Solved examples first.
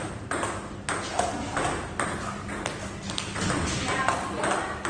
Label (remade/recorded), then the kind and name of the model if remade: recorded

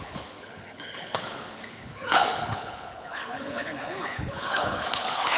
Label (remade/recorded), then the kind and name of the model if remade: remade, codec, HILCodec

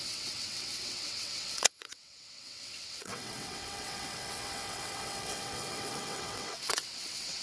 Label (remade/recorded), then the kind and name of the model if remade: remade, vocoder, WaveNeXt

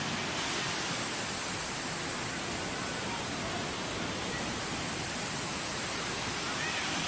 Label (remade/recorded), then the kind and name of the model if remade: recorded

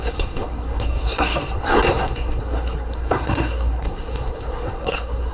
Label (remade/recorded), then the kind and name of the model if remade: remade, codec, SNAC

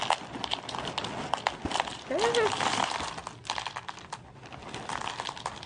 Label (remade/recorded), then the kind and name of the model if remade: recorded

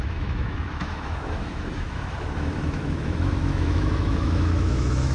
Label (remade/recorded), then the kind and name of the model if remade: remade, autoencoder, DAC-VAE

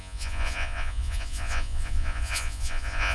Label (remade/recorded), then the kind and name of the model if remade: remade, vocoder, Vocos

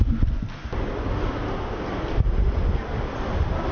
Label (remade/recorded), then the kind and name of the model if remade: recorded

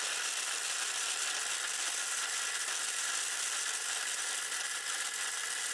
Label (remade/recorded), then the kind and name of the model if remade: recorded